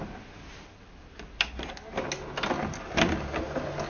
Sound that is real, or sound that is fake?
real